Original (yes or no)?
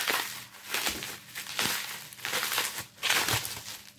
yes